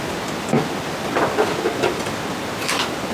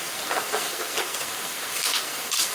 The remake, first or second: second